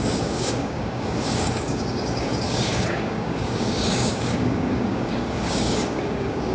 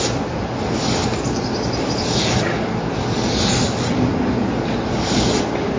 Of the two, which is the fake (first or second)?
first